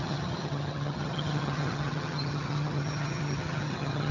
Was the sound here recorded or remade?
remade